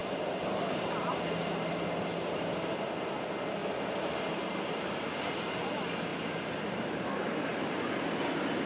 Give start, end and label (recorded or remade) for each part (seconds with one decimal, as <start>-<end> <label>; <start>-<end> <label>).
0.0-1.1 remade; 1.1-6.1 recorded; 6.1-7.1 remade; 7.1-8.7 recorded